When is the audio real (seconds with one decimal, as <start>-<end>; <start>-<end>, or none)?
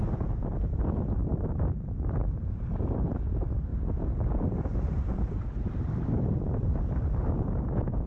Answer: 3.7-5.0